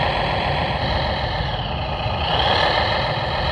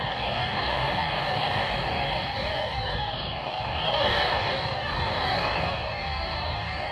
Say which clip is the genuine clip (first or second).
first